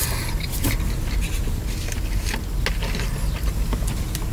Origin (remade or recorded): recorded